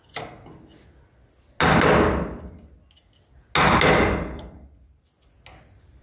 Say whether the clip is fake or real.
real